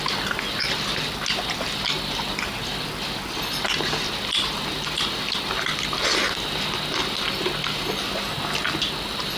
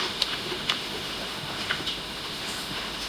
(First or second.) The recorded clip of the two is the first